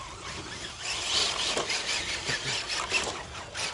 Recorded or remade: recorded